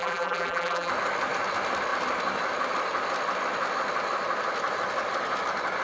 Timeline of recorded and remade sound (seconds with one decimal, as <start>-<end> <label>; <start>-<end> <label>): 0.0-0.9 remade; 0.9-5.8 recorded